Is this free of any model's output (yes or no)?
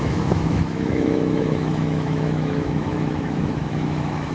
no